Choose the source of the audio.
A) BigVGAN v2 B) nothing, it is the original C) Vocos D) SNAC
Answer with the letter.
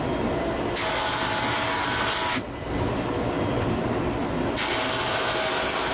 B